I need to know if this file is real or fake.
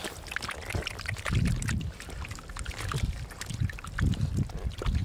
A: real